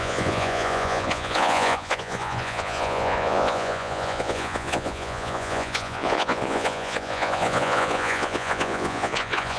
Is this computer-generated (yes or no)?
yes